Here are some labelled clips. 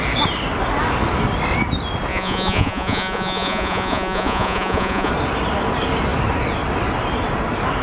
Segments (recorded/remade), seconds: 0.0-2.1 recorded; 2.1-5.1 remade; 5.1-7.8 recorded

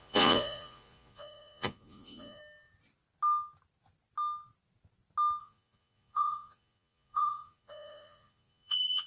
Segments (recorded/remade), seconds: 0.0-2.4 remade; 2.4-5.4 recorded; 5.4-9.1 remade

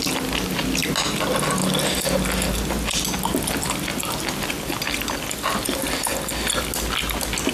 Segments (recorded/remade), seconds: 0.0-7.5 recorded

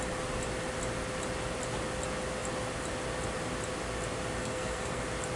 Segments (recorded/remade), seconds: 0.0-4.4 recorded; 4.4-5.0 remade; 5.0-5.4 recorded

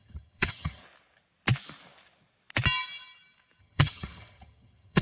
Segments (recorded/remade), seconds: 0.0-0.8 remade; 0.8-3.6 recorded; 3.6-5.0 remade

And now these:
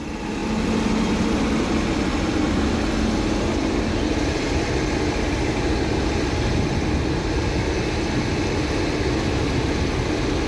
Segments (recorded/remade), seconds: 0.0-10.5 recorded

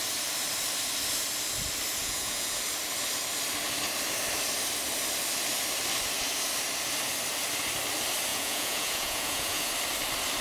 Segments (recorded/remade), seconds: 0.0-2.0 recorded; 2.0-2.6 remade; 2.6-8.3 recorded; 8.3-9.7 remade; 9.7-10.4 recorded